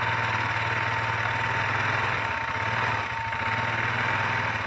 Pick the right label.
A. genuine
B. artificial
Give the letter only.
A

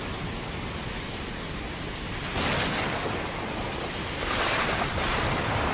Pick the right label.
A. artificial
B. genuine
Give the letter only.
B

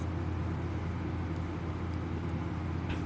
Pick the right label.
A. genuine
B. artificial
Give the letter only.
A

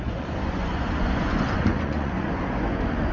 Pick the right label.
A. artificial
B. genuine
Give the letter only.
A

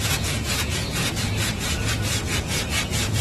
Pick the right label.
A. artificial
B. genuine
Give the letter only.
A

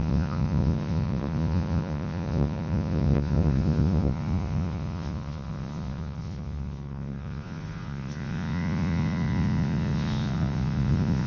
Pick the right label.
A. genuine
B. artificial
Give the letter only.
B